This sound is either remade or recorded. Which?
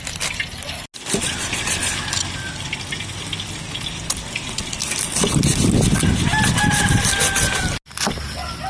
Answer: recorded